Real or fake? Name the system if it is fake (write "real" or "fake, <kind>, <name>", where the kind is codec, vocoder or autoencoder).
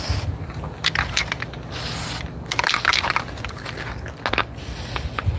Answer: real